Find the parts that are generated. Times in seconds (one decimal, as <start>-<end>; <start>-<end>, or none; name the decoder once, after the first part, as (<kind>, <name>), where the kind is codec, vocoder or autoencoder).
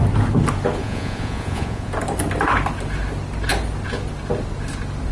0.8-1.9 (vocoder, Vocos)